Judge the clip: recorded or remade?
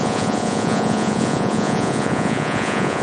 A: remade